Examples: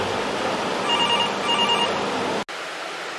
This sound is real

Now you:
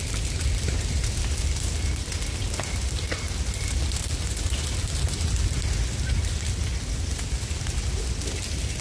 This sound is real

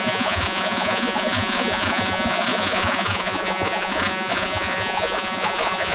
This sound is fake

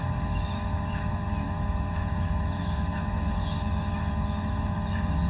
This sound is fake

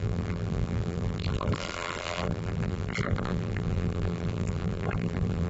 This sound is fake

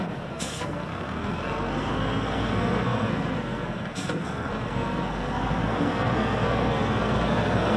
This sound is fake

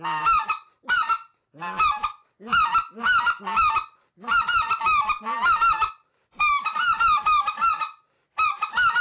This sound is real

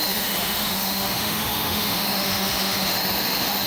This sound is fake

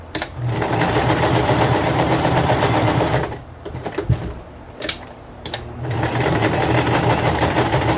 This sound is fake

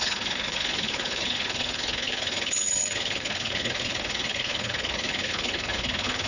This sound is fake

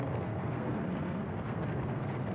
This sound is fake